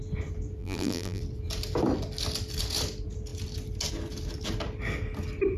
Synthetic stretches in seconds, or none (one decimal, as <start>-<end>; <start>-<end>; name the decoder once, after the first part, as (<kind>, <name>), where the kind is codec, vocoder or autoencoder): 0.6-1.2 (vocoder, BigVGAN v2)